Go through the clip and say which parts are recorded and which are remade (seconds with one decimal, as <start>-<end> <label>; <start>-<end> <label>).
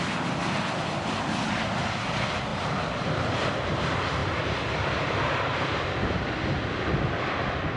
0.0-4.2 recorded; 4.2-6.3 remade; 6.3-7.8 recorded